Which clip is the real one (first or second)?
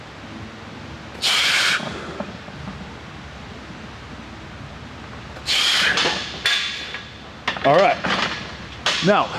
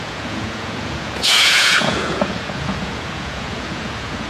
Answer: first